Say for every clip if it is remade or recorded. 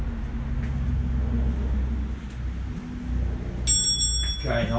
recorded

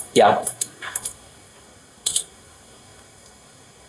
remade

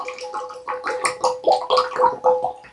recorded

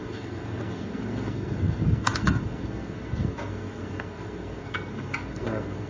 remade